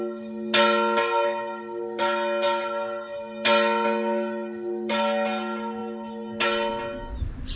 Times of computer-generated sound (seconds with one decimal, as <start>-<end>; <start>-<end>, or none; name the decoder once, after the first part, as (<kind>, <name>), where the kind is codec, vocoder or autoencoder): none